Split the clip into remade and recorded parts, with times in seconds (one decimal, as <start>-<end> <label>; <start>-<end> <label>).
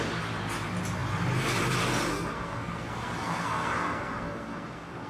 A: 0.0-2.1 recorded; 2.1-5.1 remade